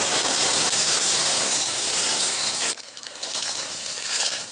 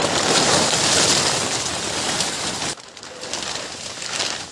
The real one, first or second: second